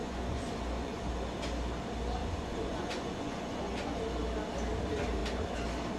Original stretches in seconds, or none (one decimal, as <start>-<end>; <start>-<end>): 1.1-2.2; 4.0-6.0